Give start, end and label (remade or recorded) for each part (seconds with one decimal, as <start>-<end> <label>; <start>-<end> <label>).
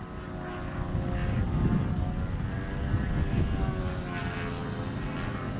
0.0-5.6 recorded